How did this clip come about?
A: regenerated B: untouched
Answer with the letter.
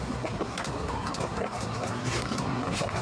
A